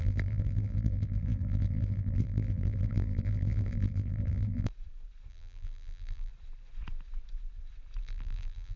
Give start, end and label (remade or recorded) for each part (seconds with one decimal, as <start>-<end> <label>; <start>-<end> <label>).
0.0-4.7 remade; 4.7-5.3 recorded; 5.3-6.3 remade; 6.3-8.0 recorded; 8.0-8.8 remade